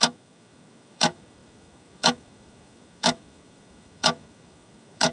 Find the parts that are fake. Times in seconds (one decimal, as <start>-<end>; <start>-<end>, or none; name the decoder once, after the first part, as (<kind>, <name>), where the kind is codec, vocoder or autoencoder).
0.0-5.1 (autoencoder, DAC-VAE)